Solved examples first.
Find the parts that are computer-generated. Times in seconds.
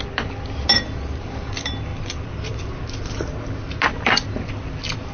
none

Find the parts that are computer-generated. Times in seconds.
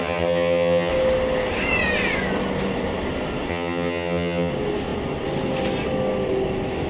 0.0-0.9 (vocoder, HiFi-GAN); 3.5-4.5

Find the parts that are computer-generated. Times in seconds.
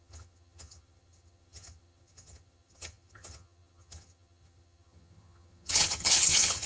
0.0-6.7 (vocoder, HiFi-GAN)